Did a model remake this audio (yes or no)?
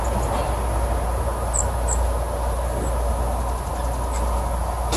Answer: no